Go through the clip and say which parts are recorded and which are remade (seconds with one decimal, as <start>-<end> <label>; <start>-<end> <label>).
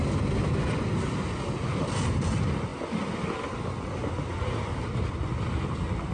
0.0-6.1 recorded